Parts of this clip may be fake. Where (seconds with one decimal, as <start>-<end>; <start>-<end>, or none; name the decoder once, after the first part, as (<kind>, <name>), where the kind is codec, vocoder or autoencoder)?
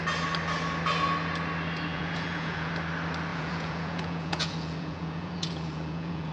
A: 1.9-2.7 (vocoder, Vocos); 3.3-6.3